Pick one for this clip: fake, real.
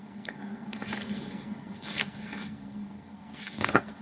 fake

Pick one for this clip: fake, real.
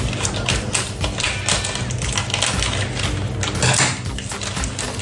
real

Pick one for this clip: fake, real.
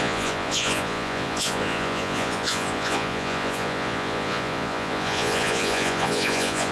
fake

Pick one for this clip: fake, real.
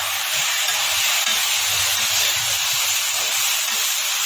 real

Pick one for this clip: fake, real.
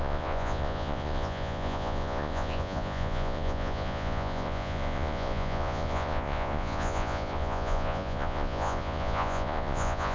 fake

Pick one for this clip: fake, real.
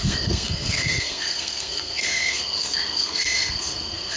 fake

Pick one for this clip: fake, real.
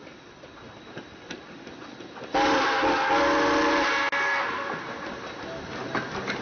real